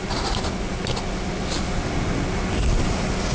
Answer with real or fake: real